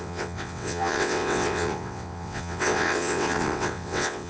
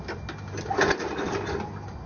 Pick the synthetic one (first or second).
first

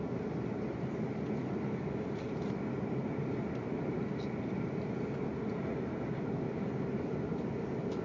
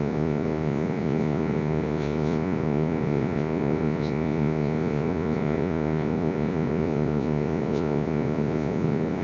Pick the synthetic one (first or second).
second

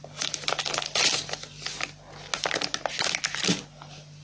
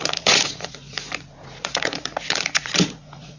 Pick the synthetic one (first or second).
second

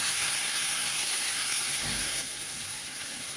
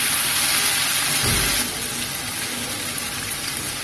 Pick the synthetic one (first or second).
first